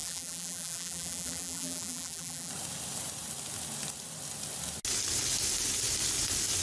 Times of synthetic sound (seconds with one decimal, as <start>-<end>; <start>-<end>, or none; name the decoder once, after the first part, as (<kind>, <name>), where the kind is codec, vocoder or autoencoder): 0.0-2.5 (vocoder, BigVGAN v2)